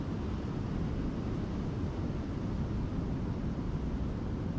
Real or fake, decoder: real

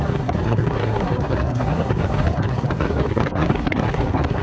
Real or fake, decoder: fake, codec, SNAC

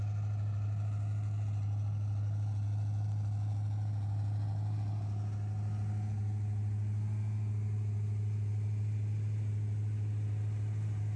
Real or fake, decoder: real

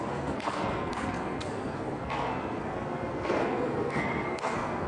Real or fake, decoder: fake, codec, SNAC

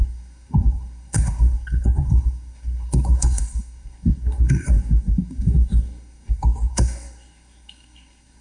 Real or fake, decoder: fake, codec, SNAC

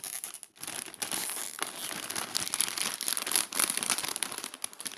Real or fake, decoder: real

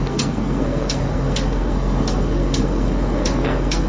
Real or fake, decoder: fake, codec, SNAC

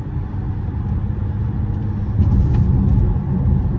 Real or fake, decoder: real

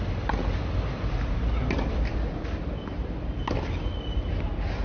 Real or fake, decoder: real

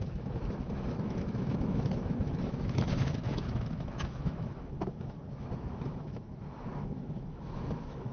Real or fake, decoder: fake, autoencoder, DAC-VAE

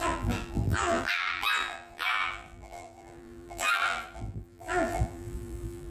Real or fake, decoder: fake, vocoder, BigVGAN v2